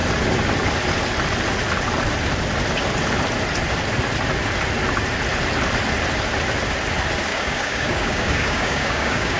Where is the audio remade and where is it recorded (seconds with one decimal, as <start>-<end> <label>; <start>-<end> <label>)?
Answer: 0.0-7.3 recorded; 7.3-9.4 remade